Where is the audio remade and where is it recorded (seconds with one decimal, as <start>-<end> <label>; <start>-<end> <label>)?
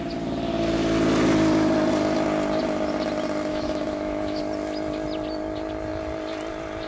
0.0-3.5 recorded; 3.5-4.4 remade; 4.4-6.9 recorded